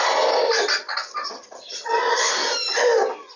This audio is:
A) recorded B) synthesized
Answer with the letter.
A